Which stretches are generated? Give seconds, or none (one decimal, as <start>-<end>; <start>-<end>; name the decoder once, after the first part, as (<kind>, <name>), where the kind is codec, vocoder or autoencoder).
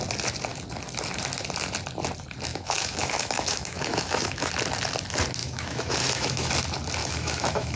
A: 2.5-4.5 (autoencoder, DAC-VAE); 5.4-6.5; 7.0-7.8